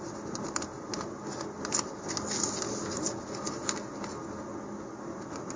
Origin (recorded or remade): recorded